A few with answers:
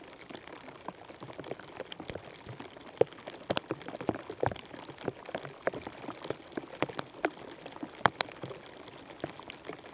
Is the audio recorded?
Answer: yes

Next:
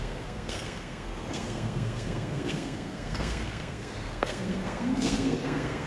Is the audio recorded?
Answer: no